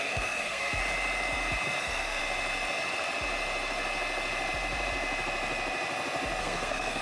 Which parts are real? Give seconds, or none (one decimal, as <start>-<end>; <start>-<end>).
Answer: 0.8-1.8; 2.2-6.4